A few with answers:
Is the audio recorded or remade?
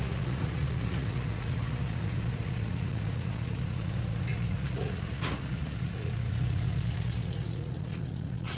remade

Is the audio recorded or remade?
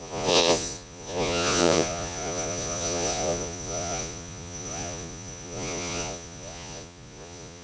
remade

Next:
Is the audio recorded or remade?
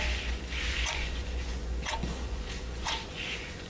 remade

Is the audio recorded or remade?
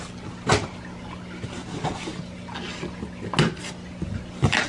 recorded